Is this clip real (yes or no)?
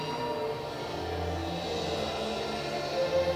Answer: yes